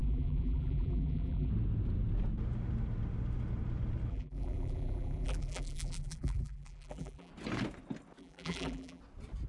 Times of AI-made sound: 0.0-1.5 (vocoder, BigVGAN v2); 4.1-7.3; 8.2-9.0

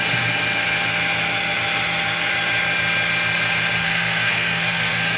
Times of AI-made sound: 3.8-5.2 (codec, SNAC)

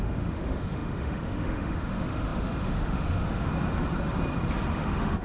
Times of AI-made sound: 0.0-3.5 (autoencoder, DAC-VAE); 4.7-5.2

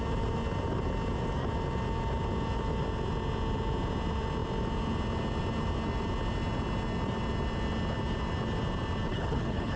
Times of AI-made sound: 9.1-9.8 (codec, HILCodec)

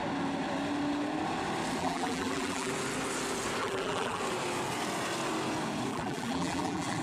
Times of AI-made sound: 1.8-2.7 (vocoder, BigVGAN v2); 3.6-4.2; 5.9-7.0

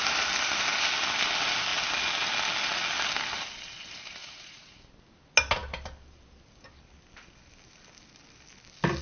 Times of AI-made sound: 4.2-4.8 (vocoder, Vocos)